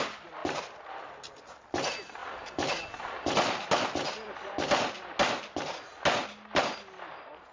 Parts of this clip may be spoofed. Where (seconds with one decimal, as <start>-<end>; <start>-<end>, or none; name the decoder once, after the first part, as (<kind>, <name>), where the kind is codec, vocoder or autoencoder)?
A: none